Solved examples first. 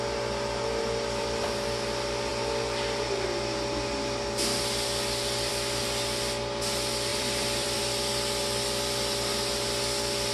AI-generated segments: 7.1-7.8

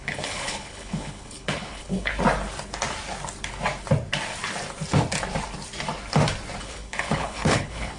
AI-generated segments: 0.0-2.1; 6.6-8.0

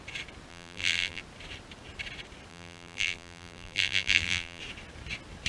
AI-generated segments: 0.5-1.2; 2.5-4.6

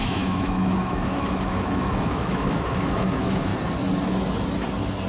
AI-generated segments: 0.0-3.5